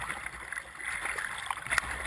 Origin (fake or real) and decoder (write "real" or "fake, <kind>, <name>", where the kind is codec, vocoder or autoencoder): real